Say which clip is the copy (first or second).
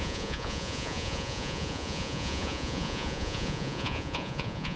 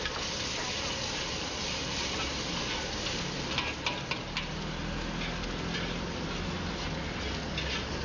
first